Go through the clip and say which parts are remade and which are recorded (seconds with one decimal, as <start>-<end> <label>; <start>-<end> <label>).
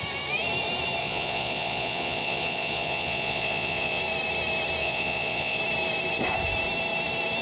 0.0-1.0 recorded; 1.0-4.0 remade; 4.0-4.8 recorded; 4.8-5.6 remade; 5.6-7.4 recorded